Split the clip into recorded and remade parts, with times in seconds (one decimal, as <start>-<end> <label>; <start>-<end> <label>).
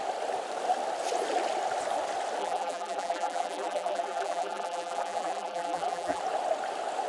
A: 0.0-2.4 recorded; 2.4-6.2 remade; 6.2-7.1 recorded